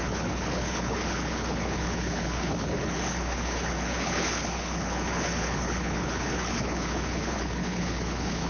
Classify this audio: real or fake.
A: fake